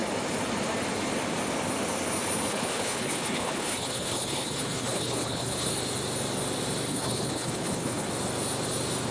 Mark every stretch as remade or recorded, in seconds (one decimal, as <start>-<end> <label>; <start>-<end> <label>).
0.0-2.5 recorded; 2.5-5.7 remade; 5.7-6.9 recorded; 6.9-8.1 remade; 8.1-9.1 recorded